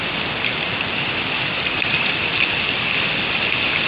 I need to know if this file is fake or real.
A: fake